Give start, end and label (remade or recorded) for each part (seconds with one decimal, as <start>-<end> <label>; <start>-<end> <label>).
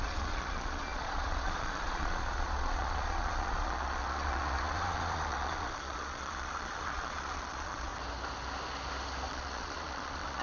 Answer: 0.0-7.9 remade; 7.9-9.3 recorded; 9.3-10.4 remade